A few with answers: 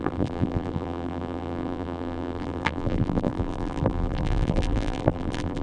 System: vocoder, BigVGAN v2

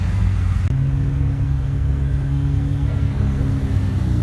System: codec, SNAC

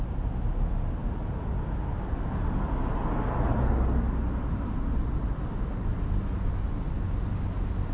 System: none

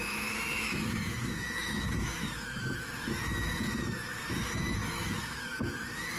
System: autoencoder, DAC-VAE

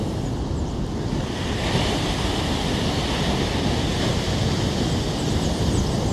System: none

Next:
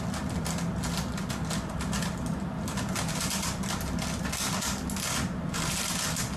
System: none